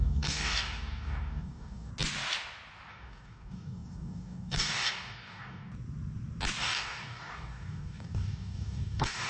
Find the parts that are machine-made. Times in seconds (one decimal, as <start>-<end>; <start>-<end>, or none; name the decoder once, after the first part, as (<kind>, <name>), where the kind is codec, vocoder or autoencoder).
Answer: 0.0-1.9 (codec, DAC); 2.9-5.7; 6.6-9.3